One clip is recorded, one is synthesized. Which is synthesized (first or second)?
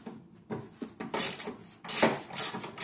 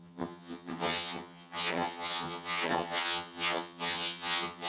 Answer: second